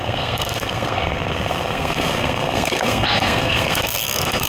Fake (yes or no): yes